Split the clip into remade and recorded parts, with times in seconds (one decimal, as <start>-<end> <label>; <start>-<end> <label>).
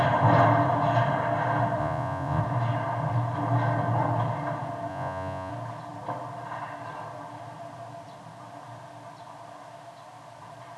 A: 0.0-1.8 recorded; 1.8-2.4 remade; 2.4-4.9 recorded; 4.9-5.5 remade; 5.5-10.8 recorded